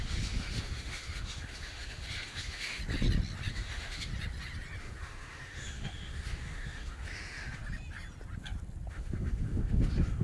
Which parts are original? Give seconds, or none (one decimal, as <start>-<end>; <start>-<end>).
2.8-3.5; 4.1-4.8; 7.6-8.9